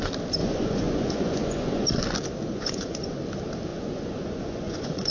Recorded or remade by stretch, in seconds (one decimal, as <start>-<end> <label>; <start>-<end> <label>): 0.0-0.4 recorded; 0.4-1.9 remade; 1.9-2.5 recorded; 2.5-3.2 remade; 3.2-3.7 recorded; 3.7-5.1 remade